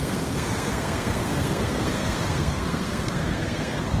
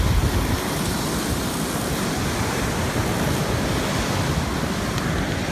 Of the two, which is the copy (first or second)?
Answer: first